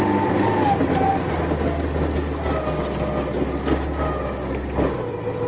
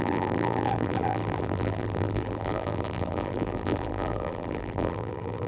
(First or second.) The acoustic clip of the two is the first